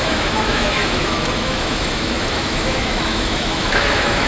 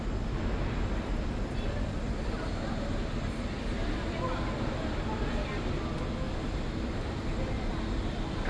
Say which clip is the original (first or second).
second